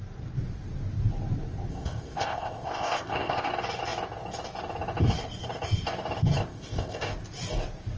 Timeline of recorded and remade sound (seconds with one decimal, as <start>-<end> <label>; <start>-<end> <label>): 0.0-1.7 recorded; 1.7-3.5 remade; 3.5-6.5 recorded; 6.5-7.1 remade; 7.1-8.0 recorded